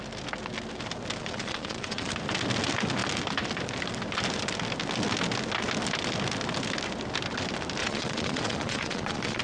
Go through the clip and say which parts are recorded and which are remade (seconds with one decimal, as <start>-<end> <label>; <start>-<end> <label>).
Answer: 0.0-1.2 recorded; 1.2-2.1 remade; 2.1-7.8 recorded; 7.8-9.4 remade